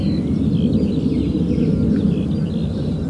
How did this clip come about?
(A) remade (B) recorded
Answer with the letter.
B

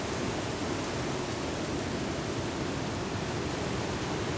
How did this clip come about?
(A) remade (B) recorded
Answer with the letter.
B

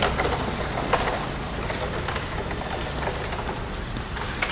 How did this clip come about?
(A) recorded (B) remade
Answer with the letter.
A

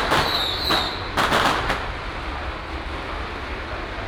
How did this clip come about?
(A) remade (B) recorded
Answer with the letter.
B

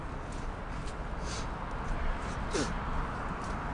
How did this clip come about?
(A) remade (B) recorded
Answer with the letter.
B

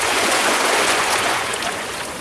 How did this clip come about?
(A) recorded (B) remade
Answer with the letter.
B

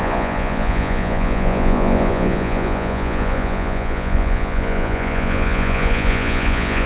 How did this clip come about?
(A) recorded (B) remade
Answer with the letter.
B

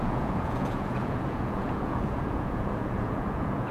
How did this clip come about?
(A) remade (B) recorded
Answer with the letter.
A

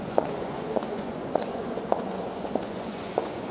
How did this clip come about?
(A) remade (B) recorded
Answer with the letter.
A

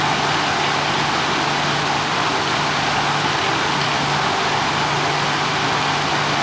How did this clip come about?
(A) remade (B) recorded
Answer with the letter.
B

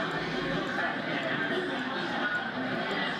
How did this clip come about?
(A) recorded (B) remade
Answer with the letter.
A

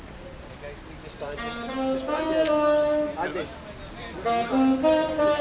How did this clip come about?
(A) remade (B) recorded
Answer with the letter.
B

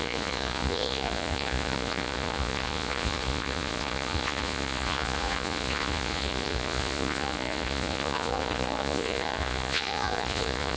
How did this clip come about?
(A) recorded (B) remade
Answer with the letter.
B